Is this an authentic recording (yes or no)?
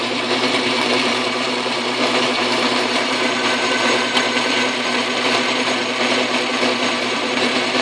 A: no